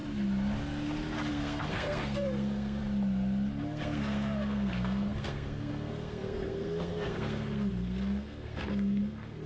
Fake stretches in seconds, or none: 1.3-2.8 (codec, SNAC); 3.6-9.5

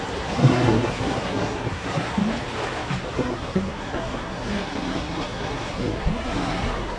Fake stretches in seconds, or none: 0.0-2.2 (codec, SNAC); 3.1-7.0

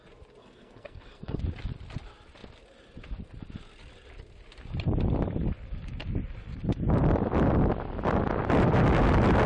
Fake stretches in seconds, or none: 0.4-1.4 (codec, SNAC)

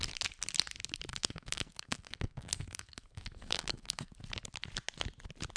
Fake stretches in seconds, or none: 1.1-4.1 (codec, SNAC)

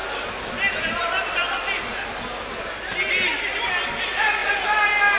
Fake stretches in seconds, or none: none

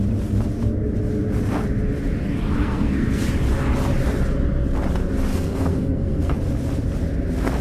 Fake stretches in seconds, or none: 2.6-3.2 (codec, SNAC); 5.3-6.4

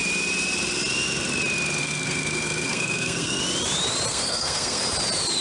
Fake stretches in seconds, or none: 1.8-3.4 (codec, SNAC); 4.1-4.8